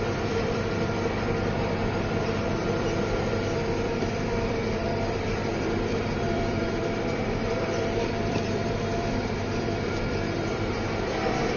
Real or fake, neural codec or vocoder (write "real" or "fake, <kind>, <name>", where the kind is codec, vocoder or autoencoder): fake, vocoder, BigVGAN v2